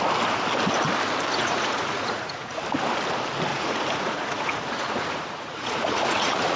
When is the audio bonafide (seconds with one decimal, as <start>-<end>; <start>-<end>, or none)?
0.0-1.3; 2.6-3.5